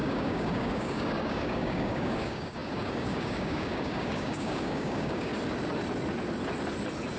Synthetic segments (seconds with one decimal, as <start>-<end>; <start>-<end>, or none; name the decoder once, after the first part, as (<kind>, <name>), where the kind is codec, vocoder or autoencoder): 0.0-5.3 (codec, DAC)